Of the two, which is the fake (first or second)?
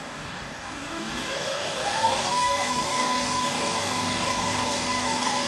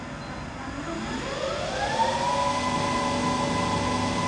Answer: first